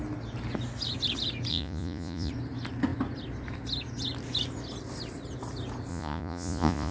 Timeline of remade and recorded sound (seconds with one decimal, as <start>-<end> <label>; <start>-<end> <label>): 0.0-1.5 recorded; 1.5-2.3 remade; 2.3-5.9 recorded; 5.9-6.9 remade